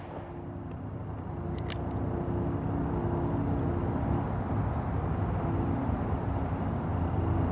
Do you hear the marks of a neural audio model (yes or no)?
no